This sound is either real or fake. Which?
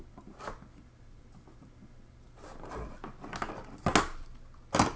real